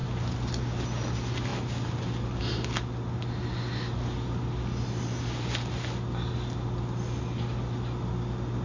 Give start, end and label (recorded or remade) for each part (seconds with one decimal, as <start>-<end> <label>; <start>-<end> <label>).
0.0-8.6 recorded